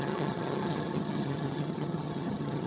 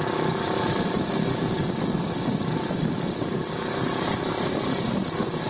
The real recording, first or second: second